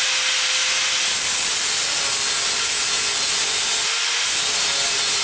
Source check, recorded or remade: recorded